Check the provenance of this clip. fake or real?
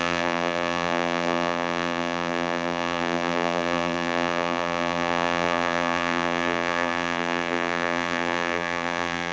fake